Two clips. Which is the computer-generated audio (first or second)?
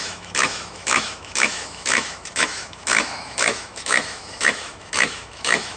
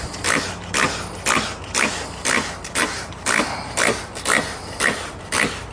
first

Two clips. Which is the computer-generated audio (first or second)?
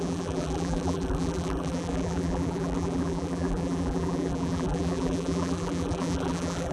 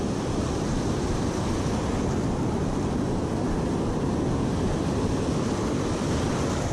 first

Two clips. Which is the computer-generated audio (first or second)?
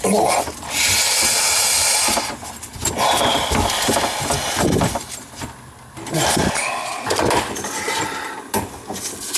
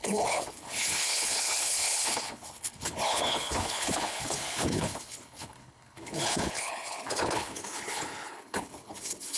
second